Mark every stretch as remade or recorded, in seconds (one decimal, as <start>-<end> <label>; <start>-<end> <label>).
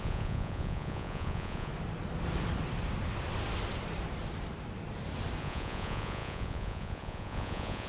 0.0-1.7 remade; 1.7-5.4 recorded; 5.4-7.9 remade